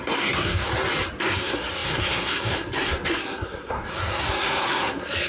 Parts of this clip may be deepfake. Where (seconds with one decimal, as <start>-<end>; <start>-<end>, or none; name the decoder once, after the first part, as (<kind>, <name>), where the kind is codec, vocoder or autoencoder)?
0.0-0.7 (codec, SNAC); 1.3-5.3

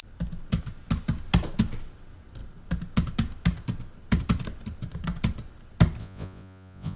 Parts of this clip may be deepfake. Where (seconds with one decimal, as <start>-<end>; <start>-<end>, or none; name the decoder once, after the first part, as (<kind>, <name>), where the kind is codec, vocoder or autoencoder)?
6.0-7.0 (vocoder, Vocos)

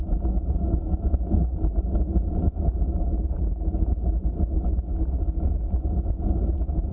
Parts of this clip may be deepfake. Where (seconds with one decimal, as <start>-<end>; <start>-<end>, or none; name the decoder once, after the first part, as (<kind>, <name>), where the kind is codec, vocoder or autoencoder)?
none

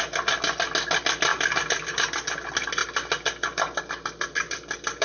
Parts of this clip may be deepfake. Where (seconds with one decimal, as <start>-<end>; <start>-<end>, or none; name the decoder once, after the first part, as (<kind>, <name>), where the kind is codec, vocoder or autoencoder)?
none

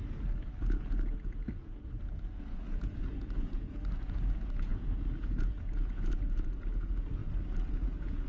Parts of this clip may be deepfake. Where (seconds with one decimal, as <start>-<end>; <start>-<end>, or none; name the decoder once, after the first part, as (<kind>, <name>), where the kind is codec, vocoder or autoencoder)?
0.6-7.2 (vocoder, Vocos); 7.7-8.3